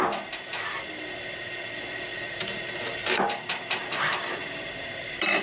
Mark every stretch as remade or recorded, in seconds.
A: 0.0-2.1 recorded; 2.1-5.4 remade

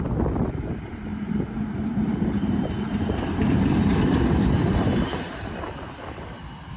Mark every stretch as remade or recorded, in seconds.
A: 0.0-1.1 recorded; 1.1-5.0 remade; 5.0-6.8 recorded